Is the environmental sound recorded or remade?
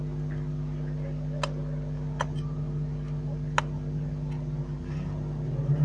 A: recorded